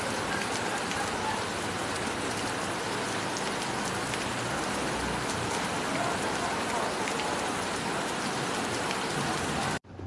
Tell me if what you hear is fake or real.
real